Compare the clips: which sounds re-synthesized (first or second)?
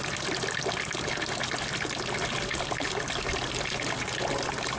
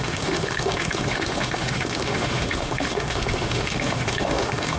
second